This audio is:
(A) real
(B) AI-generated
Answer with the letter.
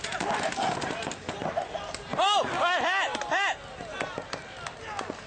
A